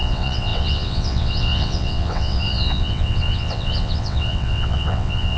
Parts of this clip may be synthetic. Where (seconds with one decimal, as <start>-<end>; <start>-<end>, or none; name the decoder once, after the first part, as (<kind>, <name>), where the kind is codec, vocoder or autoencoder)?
0.0-5.4 (vocoder, WaveNeXt)